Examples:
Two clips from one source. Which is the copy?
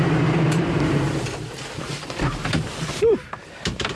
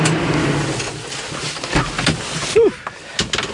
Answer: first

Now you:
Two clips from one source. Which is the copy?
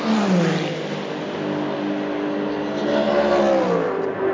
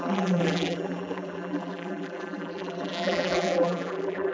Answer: second